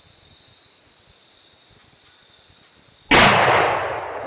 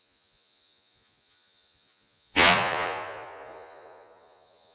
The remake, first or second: second